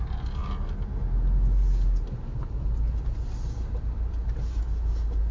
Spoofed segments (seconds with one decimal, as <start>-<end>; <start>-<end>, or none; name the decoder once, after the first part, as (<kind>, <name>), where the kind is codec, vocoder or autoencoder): none